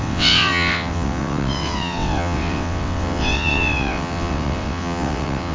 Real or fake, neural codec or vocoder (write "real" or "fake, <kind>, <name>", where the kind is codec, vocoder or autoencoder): fake, vocoder, WaveNeXt